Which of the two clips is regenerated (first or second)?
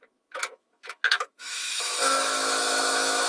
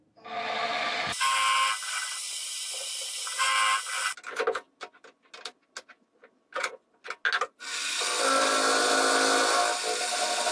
first